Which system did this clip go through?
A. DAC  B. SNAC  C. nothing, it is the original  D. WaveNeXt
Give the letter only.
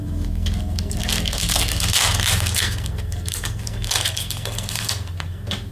B